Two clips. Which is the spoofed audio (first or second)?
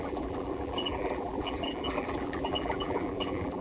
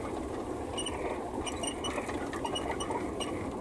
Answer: first